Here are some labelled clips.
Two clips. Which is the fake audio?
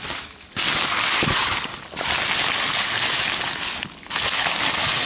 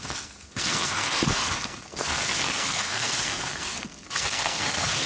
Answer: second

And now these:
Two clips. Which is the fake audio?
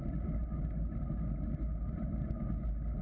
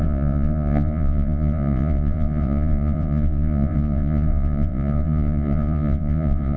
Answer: second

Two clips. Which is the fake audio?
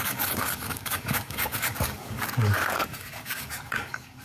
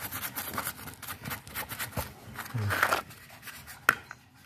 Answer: first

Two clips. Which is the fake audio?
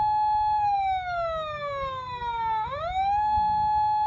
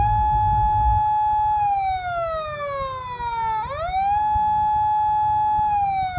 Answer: first